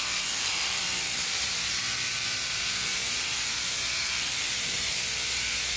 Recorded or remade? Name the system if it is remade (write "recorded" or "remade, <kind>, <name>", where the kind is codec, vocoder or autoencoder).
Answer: remade, vocoder, BigVGAN v2